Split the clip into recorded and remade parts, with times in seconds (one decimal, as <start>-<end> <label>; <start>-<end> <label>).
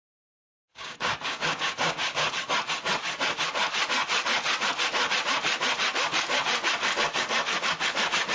0.0-2.3 remade; 2.3-8.3 recorded